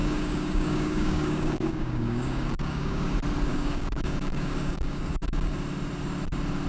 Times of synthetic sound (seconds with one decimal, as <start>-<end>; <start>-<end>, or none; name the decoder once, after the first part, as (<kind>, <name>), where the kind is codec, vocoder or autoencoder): 0.0-3.1 (codec, DAC); 3.5-5.5